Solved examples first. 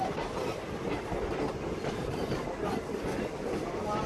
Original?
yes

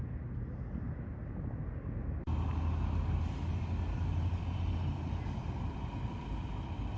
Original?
yes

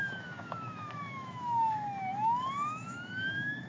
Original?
no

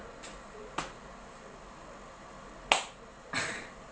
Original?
yes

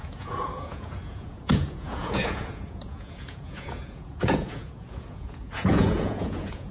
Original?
no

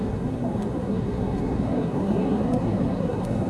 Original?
no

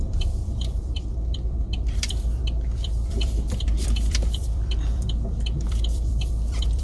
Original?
no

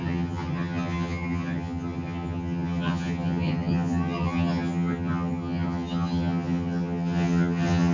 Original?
no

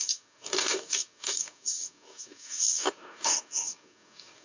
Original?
no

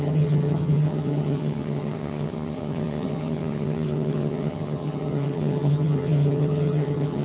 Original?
no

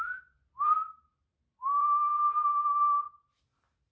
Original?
no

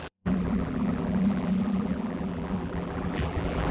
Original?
no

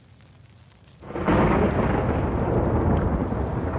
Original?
yes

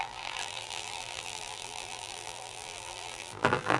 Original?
no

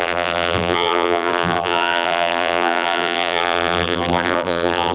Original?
no